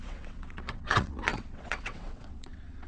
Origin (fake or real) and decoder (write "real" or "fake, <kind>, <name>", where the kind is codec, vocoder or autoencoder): fake, vocoder, WaveNeXt